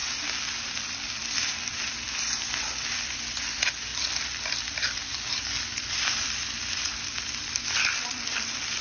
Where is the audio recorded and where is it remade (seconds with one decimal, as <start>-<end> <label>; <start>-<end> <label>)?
0.0-0.7 recorded; 0.7-8.8 remade